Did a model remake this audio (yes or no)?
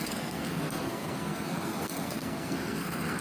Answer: yes